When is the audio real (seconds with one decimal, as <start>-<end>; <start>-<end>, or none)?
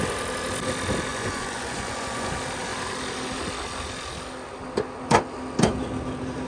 0.0-1.1; 2.3-6.5